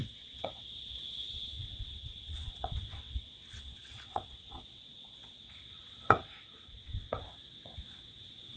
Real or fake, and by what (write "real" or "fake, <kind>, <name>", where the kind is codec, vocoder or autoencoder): fake, vocoder, WaveNeXt